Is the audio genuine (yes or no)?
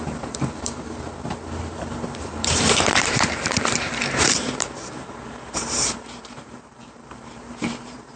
no